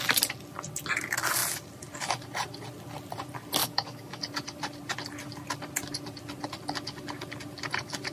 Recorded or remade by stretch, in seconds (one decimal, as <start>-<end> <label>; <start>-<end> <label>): 0.0-3.6 recorded; 3.6-4.2 remade; 4.2-8.1 recorded